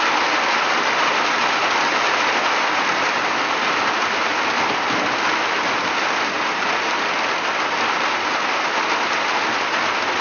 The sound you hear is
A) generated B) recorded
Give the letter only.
B